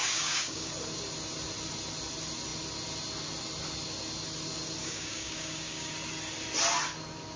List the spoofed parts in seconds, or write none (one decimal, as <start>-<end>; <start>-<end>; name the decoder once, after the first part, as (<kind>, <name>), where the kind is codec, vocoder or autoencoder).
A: 0.0-0.7 (codec, DAC); 4.8-5.9